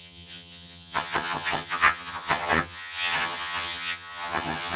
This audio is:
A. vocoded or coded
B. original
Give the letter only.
A